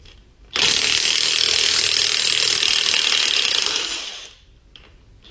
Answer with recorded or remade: recorded